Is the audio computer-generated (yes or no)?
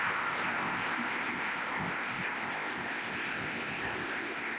yes